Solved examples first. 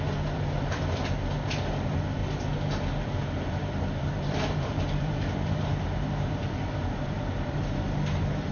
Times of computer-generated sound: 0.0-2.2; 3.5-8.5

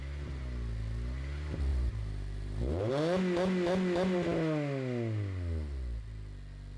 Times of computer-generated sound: 1.7-2.9

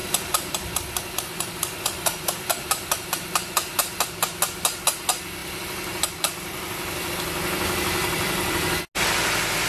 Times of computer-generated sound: 0.0-4.4; 5.4-7.1; 8.0-8.8

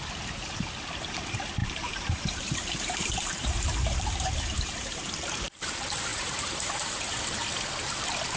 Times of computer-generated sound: 1.6-5.0; 6.1-7.7